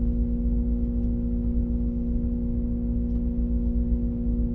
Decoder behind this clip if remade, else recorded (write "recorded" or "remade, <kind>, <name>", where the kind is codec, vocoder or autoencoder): recorded